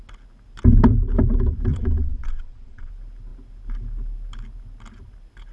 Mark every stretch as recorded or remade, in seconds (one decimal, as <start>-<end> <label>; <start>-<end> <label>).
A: 0.0-1.7 recorded; 1.7-2.9 remade; 2.9-5.5 recorded